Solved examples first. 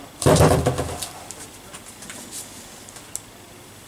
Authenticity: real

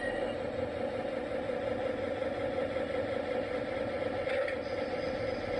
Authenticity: real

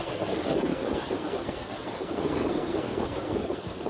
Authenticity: fake